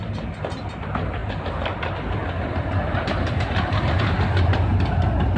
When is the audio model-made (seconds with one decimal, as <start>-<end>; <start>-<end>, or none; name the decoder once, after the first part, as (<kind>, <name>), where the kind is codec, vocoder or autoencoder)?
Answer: none